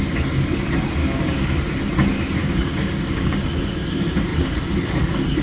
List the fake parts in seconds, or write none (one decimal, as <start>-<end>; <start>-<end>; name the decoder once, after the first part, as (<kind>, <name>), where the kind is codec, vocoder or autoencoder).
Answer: 1.0-1.6 (codec, DAC); 2.4-3.4